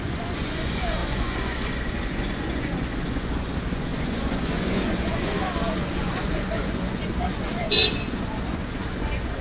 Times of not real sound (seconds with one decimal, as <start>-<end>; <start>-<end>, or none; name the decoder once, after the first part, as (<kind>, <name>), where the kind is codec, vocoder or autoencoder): 0.0-9.4 (vocoder, Vocos)